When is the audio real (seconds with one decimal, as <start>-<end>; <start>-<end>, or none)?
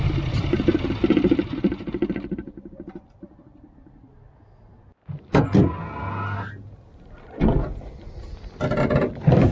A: 0.0-9.5